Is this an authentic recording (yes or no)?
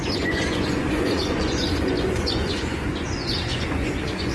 no